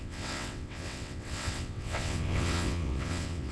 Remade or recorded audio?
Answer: remade